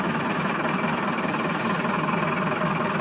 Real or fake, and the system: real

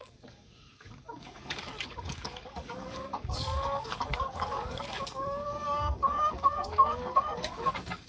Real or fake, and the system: fake, codec, DAC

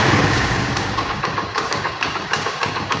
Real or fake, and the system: fake, codec, DAC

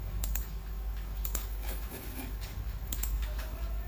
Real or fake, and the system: fake, codec, DAC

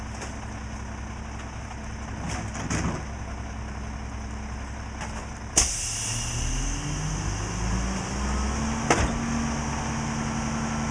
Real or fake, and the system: real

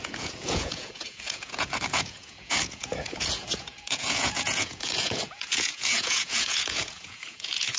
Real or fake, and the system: fake, vocoder, Vocos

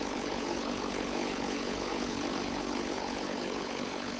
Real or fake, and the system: fake, codec, HILCodec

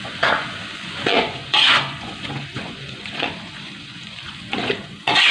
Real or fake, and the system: fake, vocoder, Vocos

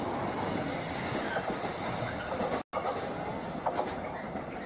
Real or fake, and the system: real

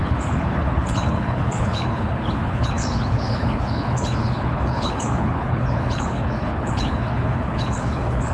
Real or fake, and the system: fake, codec, HILCodec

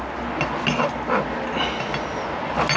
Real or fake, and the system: real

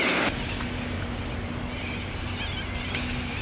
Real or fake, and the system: real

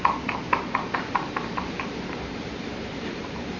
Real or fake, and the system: fake, vocoder, BigVGAN v2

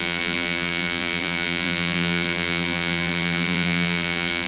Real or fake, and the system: fake, vocoder, BigVGAN v2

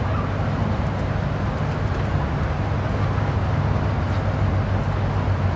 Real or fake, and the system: real